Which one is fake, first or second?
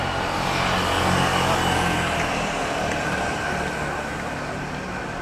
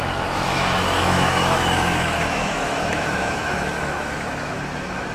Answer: second